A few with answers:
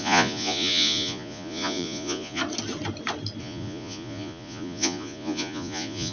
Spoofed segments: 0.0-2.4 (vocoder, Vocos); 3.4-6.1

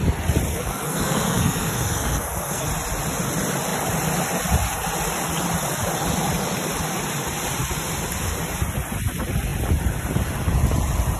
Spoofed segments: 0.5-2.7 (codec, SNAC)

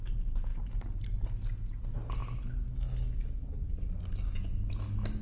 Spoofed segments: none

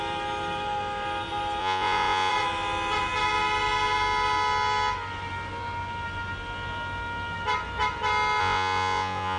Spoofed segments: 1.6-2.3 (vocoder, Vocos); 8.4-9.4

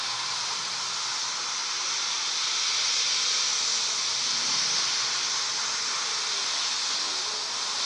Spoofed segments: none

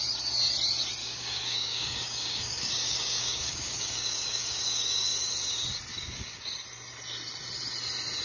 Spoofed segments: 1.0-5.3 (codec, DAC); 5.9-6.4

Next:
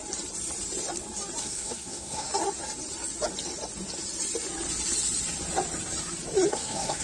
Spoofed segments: 1.4-2.3 (codec, SNAC); 6.5-7.0